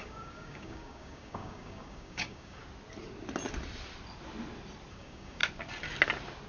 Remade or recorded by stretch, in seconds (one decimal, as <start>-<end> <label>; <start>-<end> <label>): 0.0-2.6 remade; 2.6-4.9 recorded; 4.9-5.4 remade; 5.4-6.5 recorded